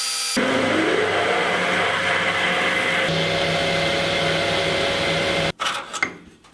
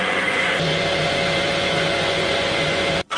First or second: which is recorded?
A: first